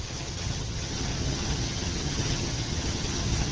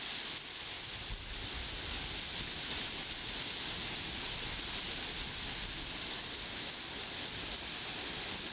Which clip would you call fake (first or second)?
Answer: first